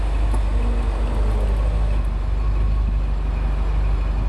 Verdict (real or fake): real